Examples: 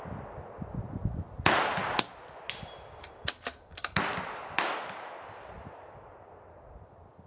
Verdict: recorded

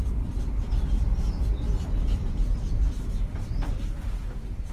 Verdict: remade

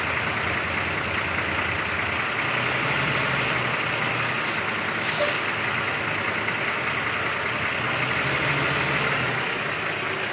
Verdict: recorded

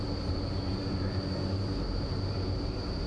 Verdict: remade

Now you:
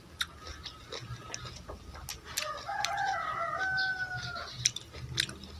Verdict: recorded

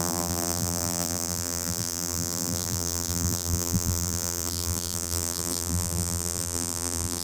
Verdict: remade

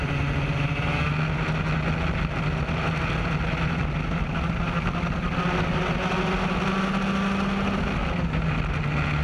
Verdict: recorded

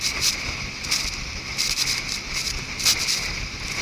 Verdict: remade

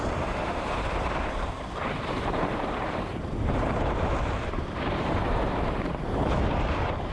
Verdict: remade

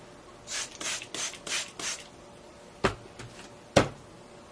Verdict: recorded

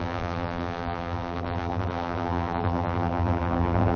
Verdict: remade